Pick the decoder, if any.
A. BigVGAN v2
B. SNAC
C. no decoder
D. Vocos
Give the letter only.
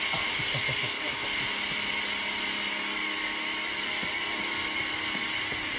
C